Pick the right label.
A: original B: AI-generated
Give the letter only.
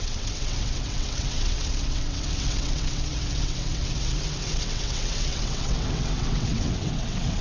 B